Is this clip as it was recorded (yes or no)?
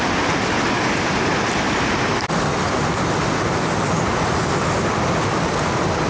yes